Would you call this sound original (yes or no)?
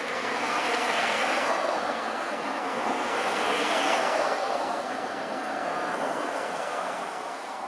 no